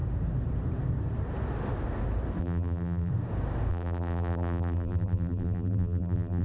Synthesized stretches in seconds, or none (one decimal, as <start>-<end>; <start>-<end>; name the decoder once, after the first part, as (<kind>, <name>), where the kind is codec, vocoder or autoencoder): 2.4-3.1 (vocoder, BigVGAN v2); 3.7-6.4